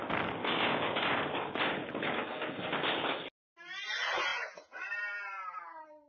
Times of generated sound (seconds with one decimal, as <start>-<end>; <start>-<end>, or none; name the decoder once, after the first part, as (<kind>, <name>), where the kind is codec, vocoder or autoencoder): 0.4-1.6 (codec, DAC)